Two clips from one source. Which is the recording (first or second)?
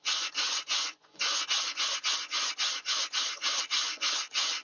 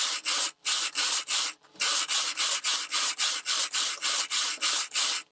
second